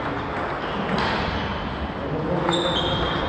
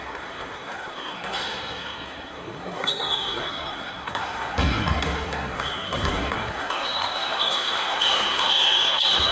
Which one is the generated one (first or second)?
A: second